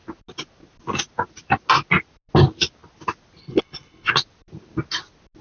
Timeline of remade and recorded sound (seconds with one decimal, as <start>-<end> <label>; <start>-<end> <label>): 0.0-3.4 recorded; 3.4-4.1 remade; 4.1-5.4 recorded